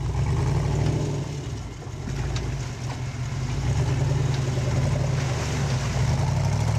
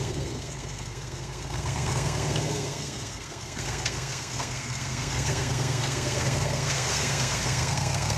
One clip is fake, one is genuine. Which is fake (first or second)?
second